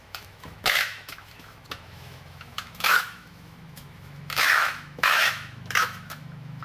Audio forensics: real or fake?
fake